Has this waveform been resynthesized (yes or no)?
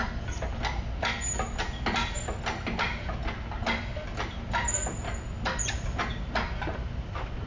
no